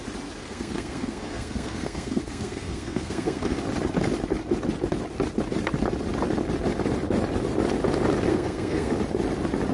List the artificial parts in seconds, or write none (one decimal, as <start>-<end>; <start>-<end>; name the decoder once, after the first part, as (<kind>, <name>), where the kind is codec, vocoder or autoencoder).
0.4-3.6 (codec, SNAC); 8.3-8.9